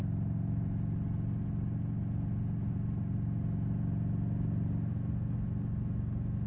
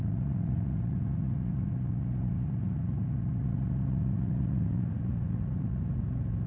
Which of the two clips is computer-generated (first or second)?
second